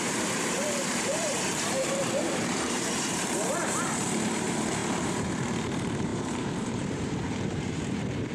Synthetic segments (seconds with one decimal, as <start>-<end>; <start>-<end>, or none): 0.0-8.3